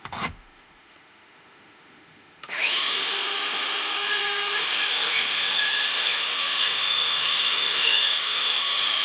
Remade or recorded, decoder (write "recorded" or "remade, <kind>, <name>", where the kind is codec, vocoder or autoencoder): remade, autoencoder, DAC-VAE